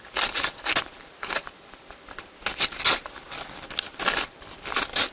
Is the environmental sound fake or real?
real